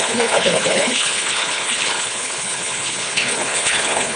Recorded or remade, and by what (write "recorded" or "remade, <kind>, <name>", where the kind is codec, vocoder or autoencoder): remade, codec, HILCodec